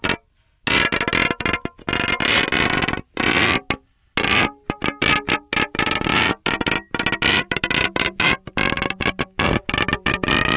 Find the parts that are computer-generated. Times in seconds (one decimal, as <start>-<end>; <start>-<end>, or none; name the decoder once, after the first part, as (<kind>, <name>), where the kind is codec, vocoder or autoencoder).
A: none